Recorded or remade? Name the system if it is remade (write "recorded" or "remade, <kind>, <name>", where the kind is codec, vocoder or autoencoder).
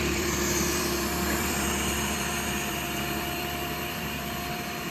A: remade, vocoder, BigVGAN v2